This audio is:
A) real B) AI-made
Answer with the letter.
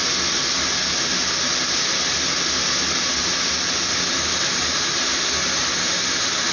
A